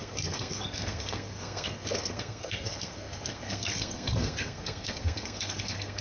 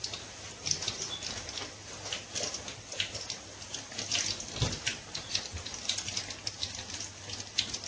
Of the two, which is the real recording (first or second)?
second